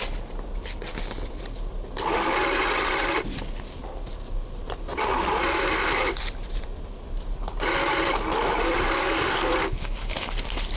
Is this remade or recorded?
recorded